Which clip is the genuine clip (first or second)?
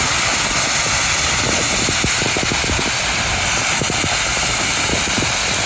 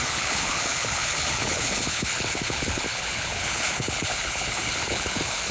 first